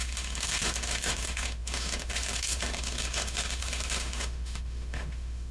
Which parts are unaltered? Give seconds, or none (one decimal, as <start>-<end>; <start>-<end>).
none